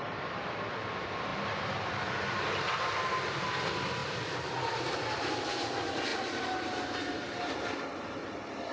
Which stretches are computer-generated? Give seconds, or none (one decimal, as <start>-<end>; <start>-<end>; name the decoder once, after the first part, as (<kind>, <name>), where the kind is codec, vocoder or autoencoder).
none